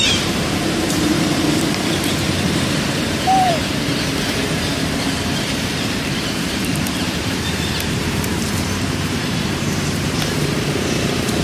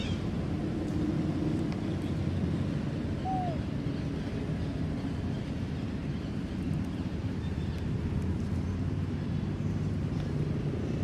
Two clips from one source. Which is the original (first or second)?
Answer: second